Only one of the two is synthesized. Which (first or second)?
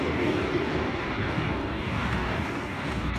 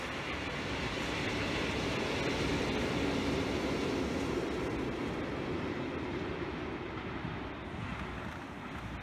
first